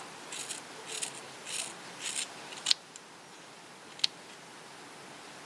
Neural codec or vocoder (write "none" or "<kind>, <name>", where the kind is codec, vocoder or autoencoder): none